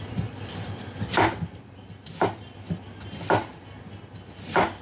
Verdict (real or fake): real